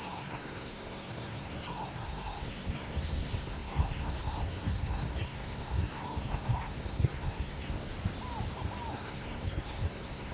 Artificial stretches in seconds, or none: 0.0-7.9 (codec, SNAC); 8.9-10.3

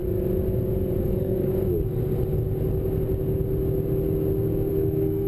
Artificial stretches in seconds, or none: 1.0-1.5 (codec, SNAC); 4.7-5.3

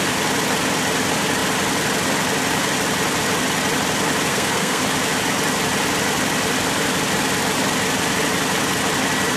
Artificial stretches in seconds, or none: 4.3-4.8 (codec, SNAC)

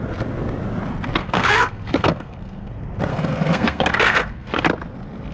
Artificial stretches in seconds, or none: 1.2-2.7 (codec, SNAC); 3.1-4.6